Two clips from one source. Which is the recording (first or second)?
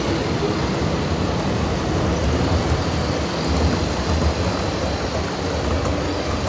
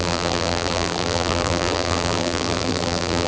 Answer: first